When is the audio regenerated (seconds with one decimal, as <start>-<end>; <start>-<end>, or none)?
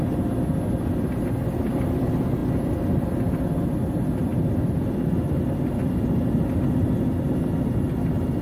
none